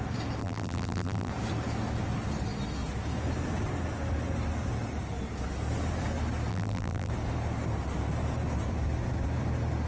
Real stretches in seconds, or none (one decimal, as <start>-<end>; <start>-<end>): 0.0-0.4; 1.3-6.5; 7.1-9.9